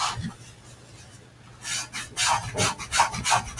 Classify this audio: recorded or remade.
recorded